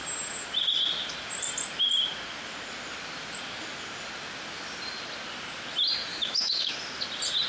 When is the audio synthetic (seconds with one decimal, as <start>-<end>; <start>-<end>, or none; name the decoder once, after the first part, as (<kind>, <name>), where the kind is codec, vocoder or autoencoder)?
6.1-6.7 (autoencoder, DAC-VAE)